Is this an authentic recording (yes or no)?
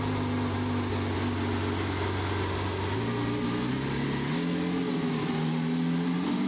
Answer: yes